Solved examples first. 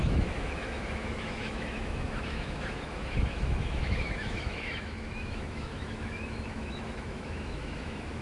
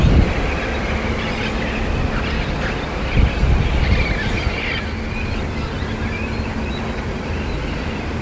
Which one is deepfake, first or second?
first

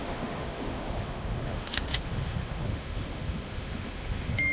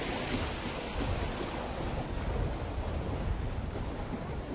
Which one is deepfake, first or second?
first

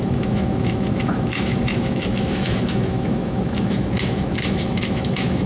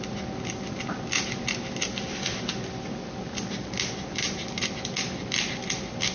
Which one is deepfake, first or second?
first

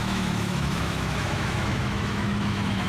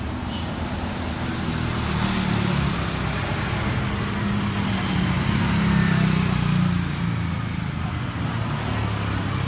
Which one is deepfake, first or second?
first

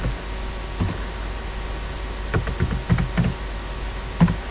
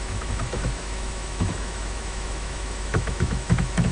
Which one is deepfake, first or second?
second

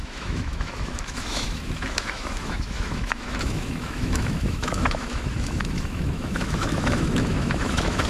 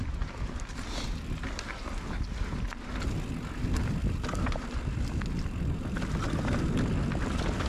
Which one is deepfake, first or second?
first